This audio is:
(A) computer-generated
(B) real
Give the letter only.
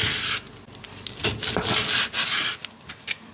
B